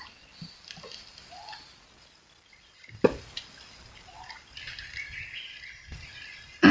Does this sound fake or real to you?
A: real